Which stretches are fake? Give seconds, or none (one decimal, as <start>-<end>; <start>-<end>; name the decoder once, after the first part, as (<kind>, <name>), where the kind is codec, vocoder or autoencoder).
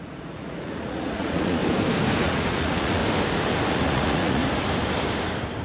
0.0-1.6 (vocoder, Vocos); 2.2-3.0; 3.7-4.4